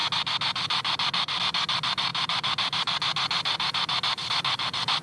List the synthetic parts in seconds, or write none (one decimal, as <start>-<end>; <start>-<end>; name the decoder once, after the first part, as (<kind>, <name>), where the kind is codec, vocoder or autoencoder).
none